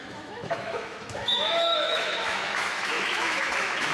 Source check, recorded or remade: remade